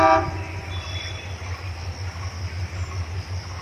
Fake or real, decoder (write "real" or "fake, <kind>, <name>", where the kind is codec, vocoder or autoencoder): real